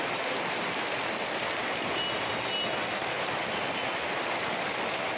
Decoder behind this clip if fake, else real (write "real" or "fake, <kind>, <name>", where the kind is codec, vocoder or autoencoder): real